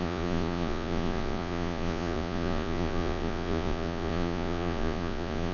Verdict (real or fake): fake